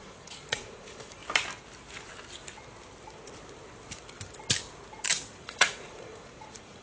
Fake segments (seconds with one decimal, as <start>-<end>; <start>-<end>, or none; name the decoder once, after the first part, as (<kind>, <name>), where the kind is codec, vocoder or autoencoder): 0.0-1.2 (vocoder, Vocos); 5.3-6.8